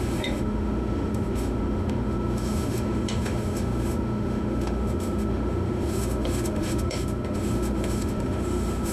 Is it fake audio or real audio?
fake